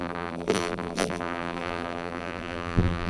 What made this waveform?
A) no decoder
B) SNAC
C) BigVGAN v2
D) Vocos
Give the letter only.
C